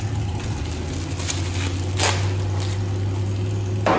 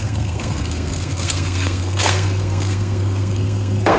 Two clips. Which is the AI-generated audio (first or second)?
second